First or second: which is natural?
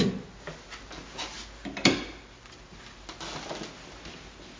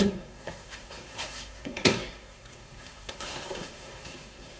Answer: first